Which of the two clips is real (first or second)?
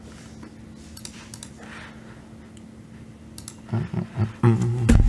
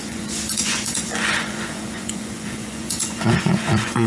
first